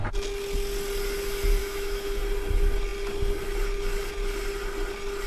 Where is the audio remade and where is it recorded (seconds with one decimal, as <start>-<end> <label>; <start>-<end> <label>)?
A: 0.0-1.6 recorded; 1.6-2.2 remade; 2.2-5.3 recorded